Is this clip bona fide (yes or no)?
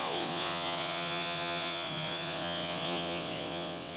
no